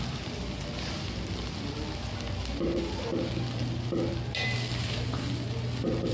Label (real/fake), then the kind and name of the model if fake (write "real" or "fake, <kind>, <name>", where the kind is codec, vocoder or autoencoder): fake, vocoder, BigVGAN v2